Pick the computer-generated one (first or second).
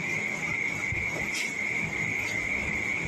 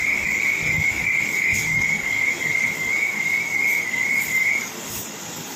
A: second